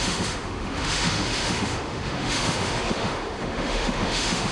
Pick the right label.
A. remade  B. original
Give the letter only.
A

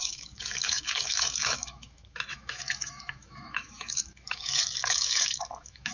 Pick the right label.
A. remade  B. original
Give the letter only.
A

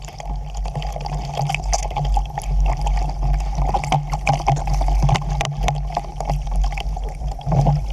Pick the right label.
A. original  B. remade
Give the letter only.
A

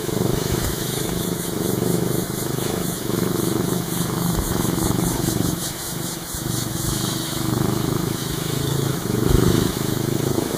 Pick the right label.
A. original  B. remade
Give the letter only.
B